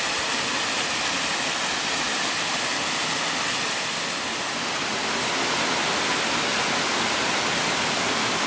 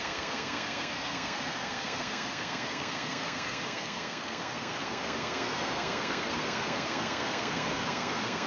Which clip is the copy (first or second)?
second